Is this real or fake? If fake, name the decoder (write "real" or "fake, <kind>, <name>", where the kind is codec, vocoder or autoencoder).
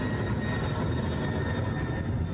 real